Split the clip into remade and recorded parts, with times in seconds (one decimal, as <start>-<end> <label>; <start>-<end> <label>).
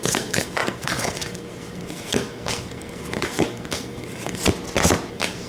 0.0-4.4 remade; 4.4-5.1 recorded; 5.1-5.5 remade